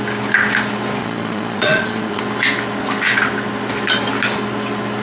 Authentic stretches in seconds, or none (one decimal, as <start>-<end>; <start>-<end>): 0.0-1.0; 2.2-5.0